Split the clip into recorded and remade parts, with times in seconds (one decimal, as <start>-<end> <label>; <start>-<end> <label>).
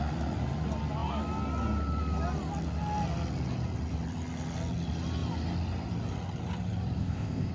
0.0-7.0 recorded; 7.0-7.5 remade